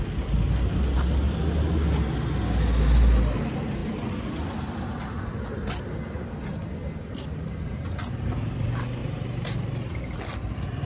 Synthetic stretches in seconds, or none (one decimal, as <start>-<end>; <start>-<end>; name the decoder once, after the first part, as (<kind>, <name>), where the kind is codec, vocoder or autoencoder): 9.0-10.0 (vocoder, BigVGAN v2)